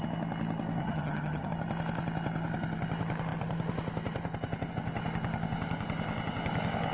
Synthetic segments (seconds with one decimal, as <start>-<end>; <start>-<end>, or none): 0.8-1.5